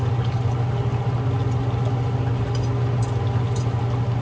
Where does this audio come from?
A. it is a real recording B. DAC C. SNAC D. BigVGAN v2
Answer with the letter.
A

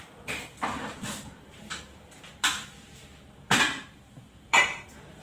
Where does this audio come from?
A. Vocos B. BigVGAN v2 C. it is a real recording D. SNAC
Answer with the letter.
B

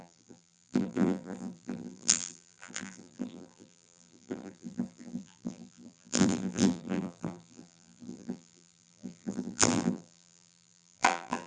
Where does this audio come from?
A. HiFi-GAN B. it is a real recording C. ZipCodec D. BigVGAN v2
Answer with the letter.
D